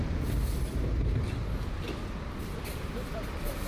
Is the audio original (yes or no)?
no